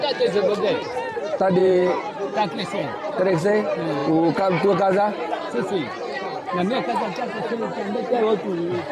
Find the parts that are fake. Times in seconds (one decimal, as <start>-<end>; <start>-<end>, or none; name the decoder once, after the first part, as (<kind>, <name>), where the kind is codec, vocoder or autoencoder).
1.6-2.1 (vocoder, BigVGAN v2)